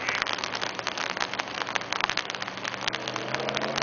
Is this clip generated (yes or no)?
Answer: no